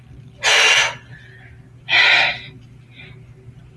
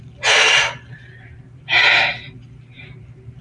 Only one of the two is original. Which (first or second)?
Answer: first